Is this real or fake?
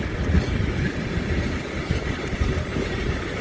real